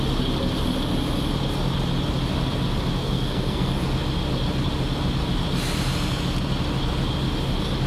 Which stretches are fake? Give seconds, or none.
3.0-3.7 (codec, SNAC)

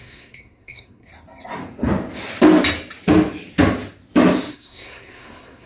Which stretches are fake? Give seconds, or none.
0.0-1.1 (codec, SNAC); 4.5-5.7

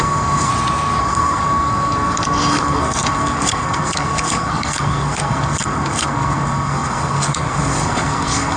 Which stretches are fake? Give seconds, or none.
0.0-0.5 (codec, SNAC); 1.0-8.6

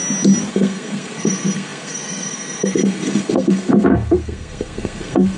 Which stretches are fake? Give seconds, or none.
0.5-5.4 (codec, SNAC)